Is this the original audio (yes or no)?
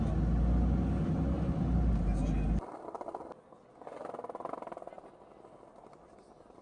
yes